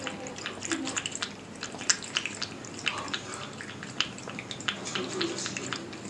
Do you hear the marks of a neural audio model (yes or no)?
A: no